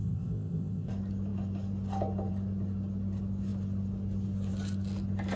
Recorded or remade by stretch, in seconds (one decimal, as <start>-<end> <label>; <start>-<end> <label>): 0.0-0.9 remade; 0.9-5.4 recorded